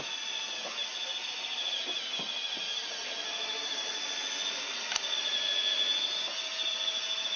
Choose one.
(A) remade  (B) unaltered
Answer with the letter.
B